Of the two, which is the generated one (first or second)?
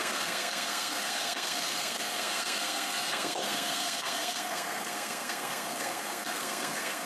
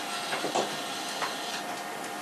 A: first